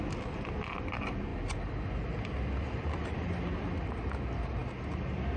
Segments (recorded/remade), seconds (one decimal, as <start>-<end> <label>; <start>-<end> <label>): 0.0-5.4 recorded